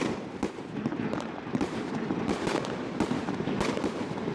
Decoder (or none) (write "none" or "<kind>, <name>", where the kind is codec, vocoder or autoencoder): vocoder, BigVGAN v2